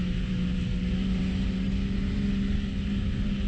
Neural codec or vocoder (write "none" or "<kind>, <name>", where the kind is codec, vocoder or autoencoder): none